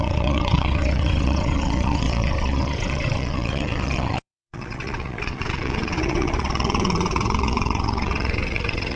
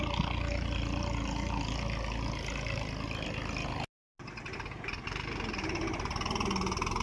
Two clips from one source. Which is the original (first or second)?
second